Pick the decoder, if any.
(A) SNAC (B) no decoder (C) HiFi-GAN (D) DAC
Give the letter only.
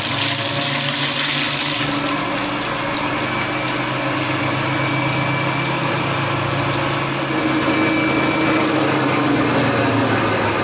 B